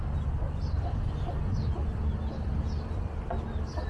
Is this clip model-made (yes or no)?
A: no